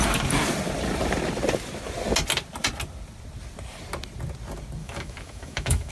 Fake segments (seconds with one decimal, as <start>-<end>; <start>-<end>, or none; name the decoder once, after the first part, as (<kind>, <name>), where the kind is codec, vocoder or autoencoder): 4.8-5.9 (autoencoder, DAC-VAE)